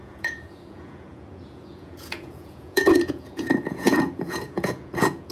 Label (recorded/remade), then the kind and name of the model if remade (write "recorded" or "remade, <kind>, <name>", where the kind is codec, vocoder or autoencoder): remade, vocoder, Vocos